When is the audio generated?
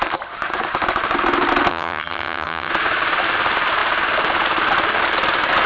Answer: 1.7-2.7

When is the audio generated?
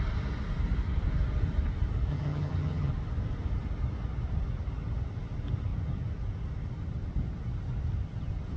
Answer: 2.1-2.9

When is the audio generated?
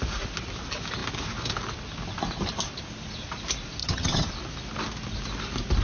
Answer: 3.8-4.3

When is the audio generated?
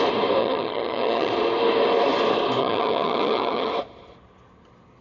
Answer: 0.4-1.3; 2.6-3.7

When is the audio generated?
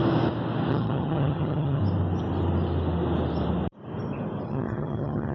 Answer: 0.7-1.8; 4.5-5.3